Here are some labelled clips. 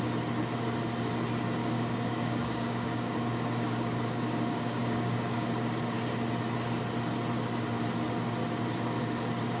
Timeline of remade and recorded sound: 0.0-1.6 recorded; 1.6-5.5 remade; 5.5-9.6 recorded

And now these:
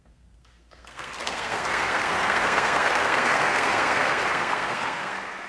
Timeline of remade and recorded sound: 0.0-5.5 remade

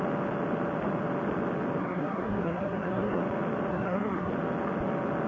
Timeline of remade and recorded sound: 0.0-1.8 recorded; 1.8-3.2 remade; 3.2-3.7 recorded; 3.7-4.3 remade; 4.3-5.3 recorded